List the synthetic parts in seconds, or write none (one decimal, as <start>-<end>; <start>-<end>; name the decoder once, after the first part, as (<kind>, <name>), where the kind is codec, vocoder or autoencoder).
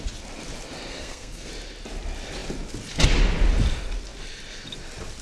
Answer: 0.9-1.5 (codec, SNAC)